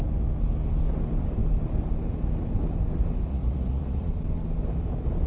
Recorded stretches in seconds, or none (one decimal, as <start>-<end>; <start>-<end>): 0.0-3.3; 4.1-5.3